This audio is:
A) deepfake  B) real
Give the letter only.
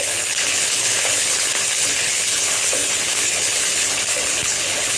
A